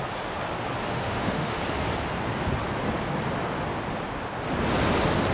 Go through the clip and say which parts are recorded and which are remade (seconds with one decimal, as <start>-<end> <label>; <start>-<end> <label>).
0.0-0.9 recorded; 0.9-1.6 remade; 1.6-5.3 recorded